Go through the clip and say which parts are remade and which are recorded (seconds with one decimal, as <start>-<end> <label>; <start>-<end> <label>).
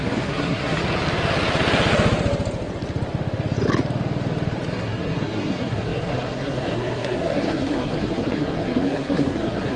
0.0-0.8 remade; 0.8-4.7 recorded; 4.7-9.8 remade